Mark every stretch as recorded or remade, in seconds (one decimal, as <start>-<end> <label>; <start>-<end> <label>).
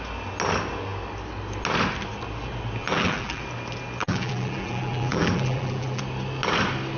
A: 0.0-2.8 recorded; 2.8-3.4 remade; 3.4-4.0 recorded; 4.0-6.0 remade; 6.0-7.0 recorded